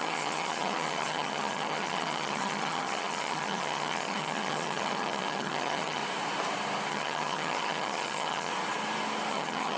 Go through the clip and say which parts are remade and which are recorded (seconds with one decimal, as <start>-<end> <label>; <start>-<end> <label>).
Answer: 0.0-6.0 remade; 6.0-6.9 recorded; 6.9-8.5 remade; 8.5-9.3 recorded; 9.3-9.8 remade